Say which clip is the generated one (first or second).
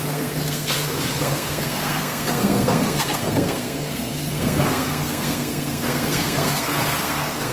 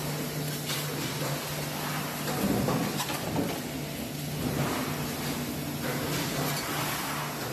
first